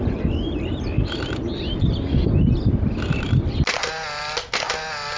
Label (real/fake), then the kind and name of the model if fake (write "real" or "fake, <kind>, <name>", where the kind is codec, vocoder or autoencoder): real